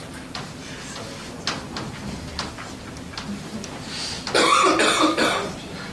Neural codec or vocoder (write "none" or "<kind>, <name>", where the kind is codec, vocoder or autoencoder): none